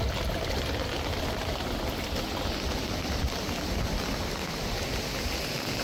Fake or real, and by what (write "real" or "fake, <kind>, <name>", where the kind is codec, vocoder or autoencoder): real